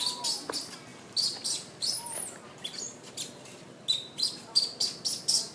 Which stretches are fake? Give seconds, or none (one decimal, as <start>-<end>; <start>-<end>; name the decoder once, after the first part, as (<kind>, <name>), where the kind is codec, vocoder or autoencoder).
none